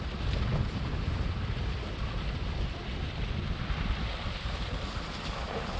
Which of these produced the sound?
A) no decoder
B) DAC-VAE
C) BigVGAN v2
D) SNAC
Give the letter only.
C